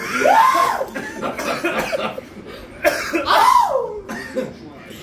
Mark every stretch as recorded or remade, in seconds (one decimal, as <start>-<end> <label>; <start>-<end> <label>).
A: 0.0-0.6 recorded; 0.6-1.4 remade; 1.4-5.0 recorded